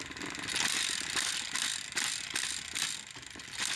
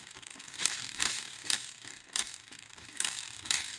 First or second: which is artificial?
second